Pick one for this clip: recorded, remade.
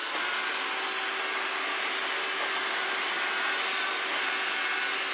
recorded